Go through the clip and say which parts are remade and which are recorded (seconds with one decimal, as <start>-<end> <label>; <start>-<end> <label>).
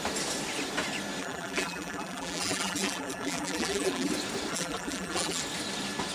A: 0.0-1.2 recorded; 1.2-4.1 remade; 4.1-4.5 recorded; 4.5-5.4 remade; 5.4-6.1 recorded